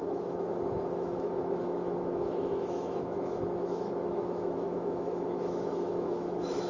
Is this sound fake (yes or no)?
yes